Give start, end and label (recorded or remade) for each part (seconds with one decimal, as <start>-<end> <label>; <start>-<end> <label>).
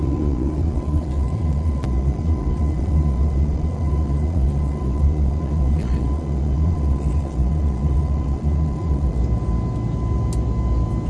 0.0-9.2 remade; 9.2-11.1 recorded